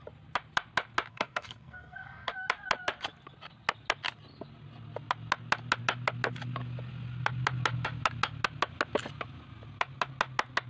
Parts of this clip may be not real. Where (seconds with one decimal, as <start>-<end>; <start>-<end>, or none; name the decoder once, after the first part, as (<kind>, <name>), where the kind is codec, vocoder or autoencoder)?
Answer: 1.1-2.3 (codec, SNAC)